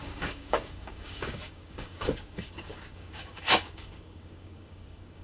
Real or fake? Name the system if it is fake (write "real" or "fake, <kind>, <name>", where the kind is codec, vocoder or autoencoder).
fake, codec, DAC